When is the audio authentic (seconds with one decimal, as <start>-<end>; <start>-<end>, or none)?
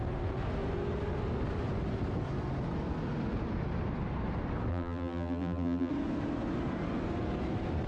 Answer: 0.0-4.7; 5.9-7.9